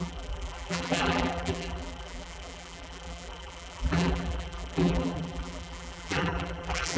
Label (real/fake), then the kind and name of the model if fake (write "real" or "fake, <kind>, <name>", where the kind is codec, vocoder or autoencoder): fake, vocoder, BigVGAN v2